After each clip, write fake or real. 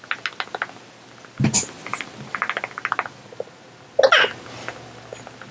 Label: real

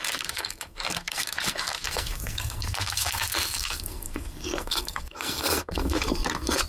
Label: fake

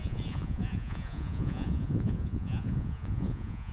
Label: fake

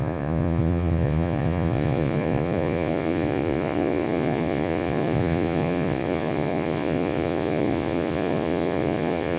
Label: fake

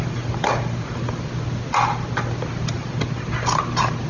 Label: real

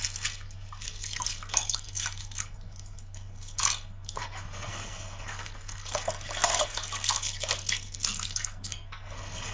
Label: fake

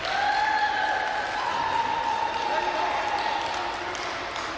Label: real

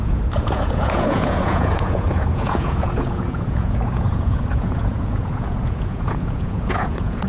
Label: fake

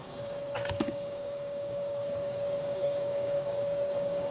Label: fake